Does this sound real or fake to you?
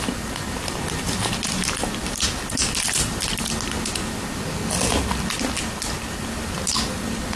real